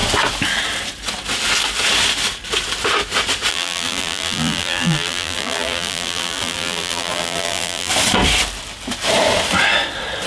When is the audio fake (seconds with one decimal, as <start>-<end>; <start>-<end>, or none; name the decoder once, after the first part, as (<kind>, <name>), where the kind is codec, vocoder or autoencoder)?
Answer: 3.5-7.9 (vocoder, BigVGAN v2)